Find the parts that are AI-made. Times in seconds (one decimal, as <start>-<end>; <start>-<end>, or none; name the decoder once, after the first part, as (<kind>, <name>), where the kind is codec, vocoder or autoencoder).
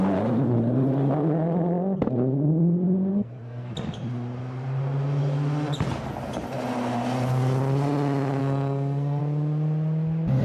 3.1-3.7 (codec, SNAC); 8.4-9.2